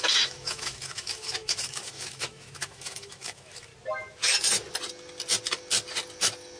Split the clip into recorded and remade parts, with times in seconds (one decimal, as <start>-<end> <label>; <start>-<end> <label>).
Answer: 0.0-3.7 remade; 3.7-6.6 recorded